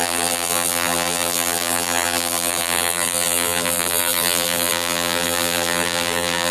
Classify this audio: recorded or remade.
remade